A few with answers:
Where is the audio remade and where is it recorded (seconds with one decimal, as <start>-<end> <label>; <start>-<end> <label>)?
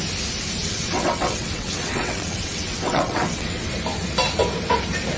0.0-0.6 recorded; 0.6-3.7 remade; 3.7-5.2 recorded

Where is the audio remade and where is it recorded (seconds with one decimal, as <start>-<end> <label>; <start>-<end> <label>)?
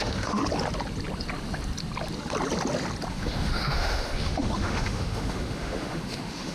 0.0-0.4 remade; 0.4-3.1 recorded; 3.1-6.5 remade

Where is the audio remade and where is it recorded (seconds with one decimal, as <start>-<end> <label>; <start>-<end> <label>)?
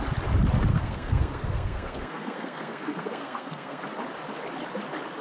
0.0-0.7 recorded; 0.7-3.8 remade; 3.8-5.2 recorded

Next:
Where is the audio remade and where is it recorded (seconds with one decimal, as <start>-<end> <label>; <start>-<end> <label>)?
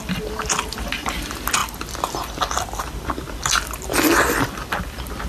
0.0-5.3 recorded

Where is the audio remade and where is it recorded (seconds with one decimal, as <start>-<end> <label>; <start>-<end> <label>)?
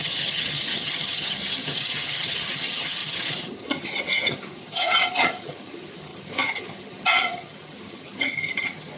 0.0-9.0 remade